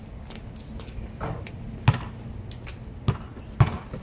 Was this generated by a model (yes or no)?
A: no